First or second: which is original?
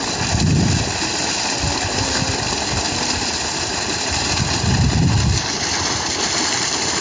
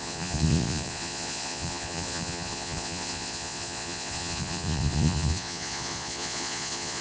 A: first